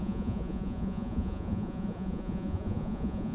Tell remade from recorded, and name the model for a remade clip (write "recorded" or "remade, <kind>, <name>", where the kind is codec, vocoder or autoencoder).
remade, vocoder, Vocos